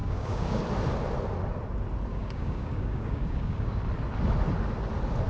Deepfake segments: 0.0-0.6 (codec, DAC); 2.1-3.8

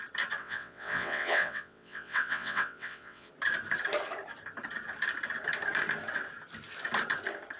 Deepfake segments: 0.4-3.3 (vocoder, WaveNeXt)